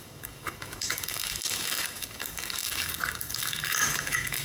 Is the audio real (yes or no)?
no